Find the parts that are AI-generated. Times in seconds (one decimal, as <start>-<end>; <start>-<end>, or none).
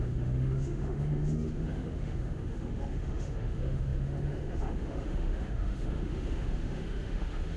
0.0-7.6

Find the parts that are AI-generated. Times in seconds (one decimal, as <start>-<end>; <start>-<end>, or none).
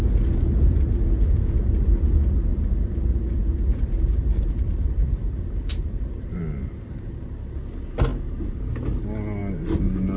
2.5-6.4; 8.1-8.7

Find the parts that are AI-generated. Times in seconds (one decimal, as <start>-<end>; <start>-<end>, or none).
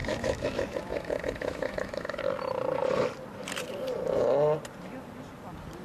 0.0-2.2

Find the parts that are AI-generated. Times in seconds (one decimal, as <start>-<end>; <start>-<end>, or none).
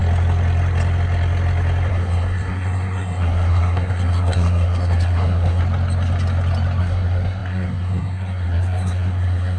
1.9-5.6; 6.8-9.6